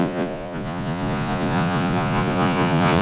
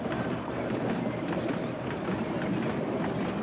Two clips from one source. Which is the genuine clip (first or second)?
second